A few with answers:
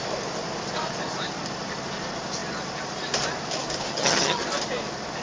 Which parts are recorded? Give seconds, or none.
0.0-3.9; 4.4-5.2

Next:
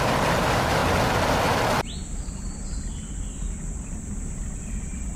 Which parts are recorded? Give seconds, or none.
0.8-3.9

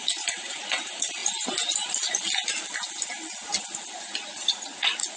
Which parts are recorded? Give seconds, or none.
1.2-3.6

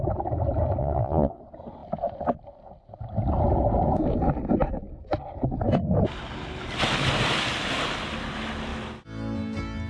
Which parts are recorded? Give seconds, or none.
0.0-0.8; 1.4-9.9

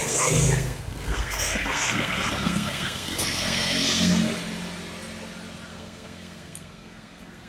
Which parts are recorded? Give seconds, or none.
4.3-5.7

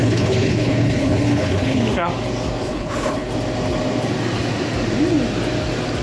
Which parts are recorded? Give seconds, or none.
1.8-2.6; 3.3-6.0